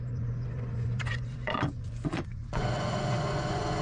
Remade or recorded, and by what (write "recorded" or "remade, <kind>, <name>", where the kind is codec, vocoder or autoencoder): remade, vocoder, Vocos